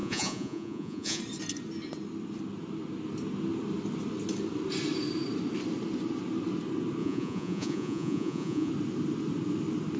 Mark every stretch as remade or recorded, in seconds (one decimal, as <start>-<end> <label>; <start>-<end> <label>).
0.0-1.2 remade; 1.2-7.0 recorded; 7.0-8.7 remade; 8.7-10.0 recorded